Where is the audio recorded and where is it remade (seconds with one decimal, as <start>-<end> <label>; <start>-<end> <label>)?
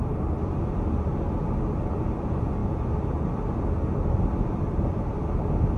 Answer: 0.0-5.8 recorded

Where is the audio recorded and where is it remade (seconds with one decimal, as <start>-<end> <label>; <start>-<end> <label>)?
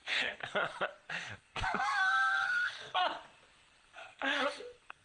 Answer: 0.0-0.4 remade; 0.4-1.1 recorded; 1.1-3.0 remade; 3.0-3.8 recorded; 3.8-5.0 remade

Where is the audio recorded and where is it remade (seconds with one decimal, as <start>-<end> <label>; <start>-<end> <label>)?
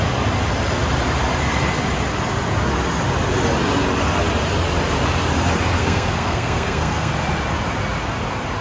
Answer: 0.0-5.8 recorded; 5.8-7.1 remade; 7.1-8.6 recorded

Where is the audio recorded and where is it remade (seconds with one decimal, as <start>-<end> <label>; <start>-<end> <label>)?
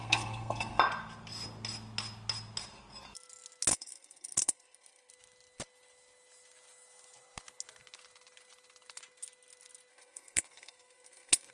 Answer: 0.0-0.8 remade; 0.8-3.7 recorded; 3.7-5.1 remade; 5.1-9.9 recorded; 9.9-11.5 remade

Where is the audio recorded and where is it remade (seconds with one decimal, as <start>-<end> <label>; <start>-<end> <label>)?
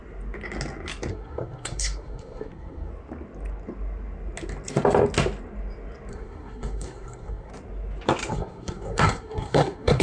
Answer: 0.0-1.1 recorded; 1.1-2.9 remade; 2.9-6.1 recorded; 6.1-7.5 remade; 7.5-8.3 recorded; 8.3-10.0 remade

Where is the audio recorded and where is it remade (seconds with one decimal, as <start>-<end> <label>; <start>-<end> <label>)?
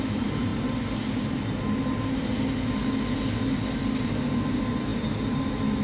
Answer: 0.0-5.8 recorded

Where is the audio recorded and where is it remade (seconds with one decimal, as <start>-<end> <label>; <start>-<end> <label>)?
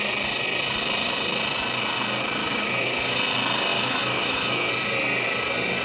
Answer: 0.0-2.4 recorded; 2.4-3.2 remade; 3.2-3.7 recorded; 3.7-4.7 remade; 4.7-5.8 recorded